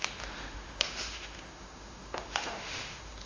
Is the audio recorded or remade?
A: remade